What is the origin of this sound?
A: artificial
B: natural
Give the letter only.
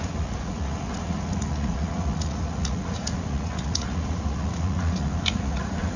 A